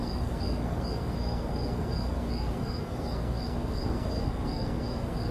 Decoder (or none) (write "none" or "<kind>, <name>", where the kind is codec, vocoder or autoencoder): codec, SNAC